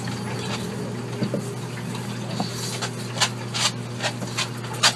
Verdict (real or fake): real